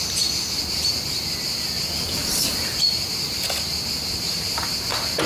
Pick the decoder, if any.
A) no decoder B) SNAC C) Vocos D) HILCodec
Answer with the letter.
A